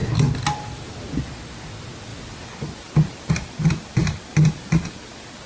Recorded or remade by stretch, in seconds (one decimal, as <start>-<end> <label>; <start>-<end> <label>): 0.0-5.5 recorded